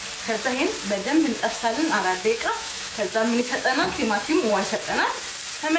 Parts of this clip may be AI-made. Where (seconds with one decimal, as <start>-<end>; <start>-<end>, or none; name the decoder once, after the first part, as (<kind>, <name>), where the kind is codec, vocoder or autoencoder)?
1.0-4.5 (autoencoder, DAC-VAE)